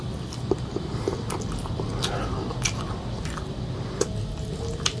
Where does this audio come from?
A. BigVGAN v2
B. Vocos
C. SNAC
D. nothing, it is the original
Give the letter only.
D